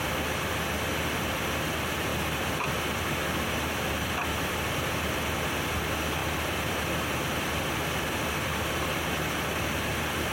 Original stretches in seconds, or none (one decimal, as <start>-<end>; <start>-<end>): 0.0-10.3